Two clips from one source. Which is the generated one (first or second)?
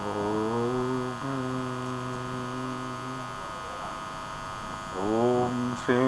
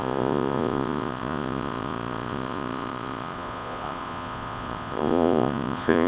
second